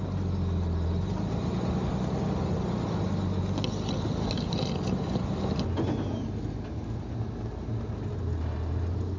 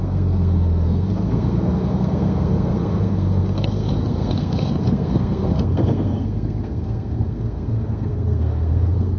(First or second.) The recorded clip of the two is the first